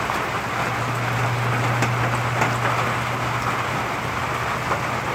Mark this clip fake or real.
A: real